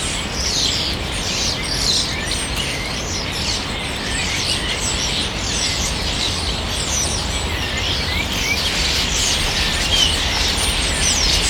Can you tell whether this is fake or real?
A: real